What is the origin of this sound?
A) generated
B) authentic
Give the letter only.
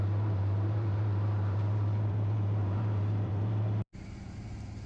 A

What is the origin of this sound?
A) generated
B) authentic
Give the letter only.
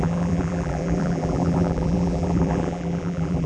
A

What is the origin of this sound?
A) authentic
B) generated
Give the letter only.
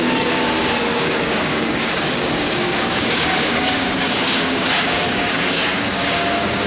B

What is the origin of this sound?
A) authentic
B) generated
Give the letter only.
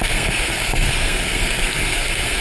B